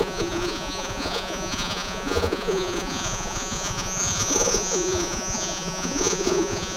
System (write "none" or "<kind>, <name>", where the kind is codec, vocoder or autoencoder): vocoder, Vocos